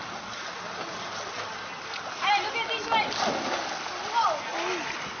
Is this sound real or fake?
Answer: real